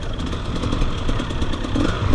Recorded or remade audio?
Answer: recorded